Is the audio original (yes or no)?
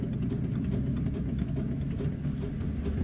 yes